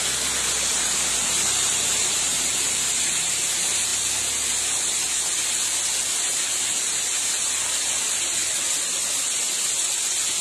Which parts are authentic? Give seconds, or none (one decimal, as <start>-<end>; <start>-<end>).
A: 0.0-0.7; 3.3-10.4